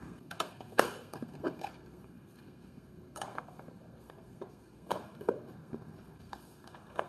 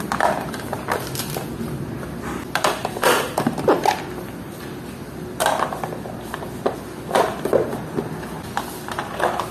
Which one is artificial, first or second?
first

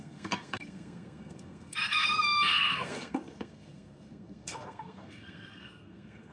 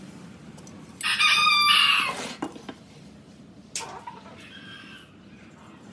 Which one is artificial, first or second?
first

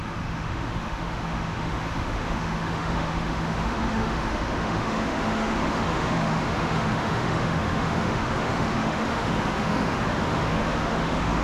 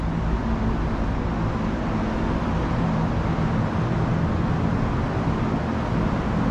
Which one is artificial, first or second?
first